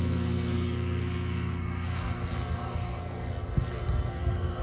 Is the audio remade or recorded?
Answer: remade